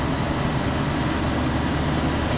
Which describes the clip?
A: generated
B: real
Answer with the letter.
B